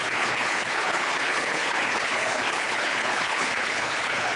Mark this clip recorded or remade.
remade